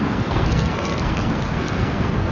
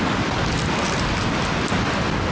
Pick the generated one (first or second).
first